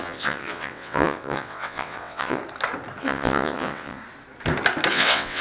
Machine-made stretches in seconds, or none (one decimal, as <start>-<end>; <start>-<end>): 0.0-2.4; 3.0-4.0; 4.9-5.4

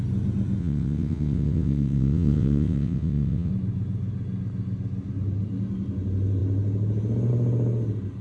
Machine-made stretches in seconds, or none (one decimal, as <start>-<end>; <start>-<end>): 0.6-3.5

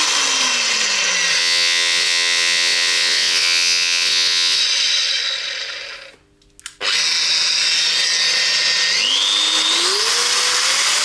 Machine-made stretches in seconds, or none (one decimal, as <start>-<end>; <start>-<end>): 1.4-4.6

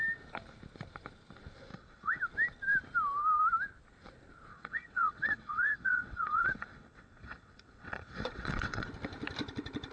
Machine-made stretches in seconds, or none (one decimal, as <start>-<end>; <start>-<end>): 1.7-2.2; 4.5-8.9

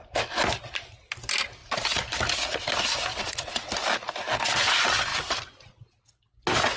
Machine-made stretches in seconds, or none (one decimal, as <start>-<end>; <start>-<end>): 3.1-3.7

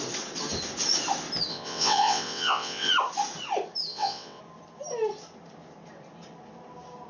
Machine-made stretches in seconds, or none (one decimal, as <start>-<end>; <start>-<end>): 1.5-2.9; 3.9-4.4

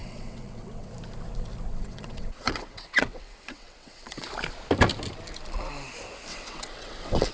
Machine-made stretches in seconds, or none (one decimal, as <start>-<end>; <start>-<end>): 0.0-0.9; 1.7-4.3; 6.3-7.3